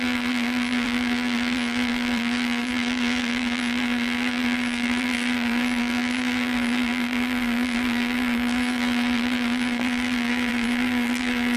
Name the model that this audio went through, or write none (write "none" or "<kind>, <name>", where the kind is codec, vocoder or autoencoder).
vocoder, BigVGAN v2